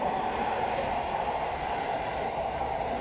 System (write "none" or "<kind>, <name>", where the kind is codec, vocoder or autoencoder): none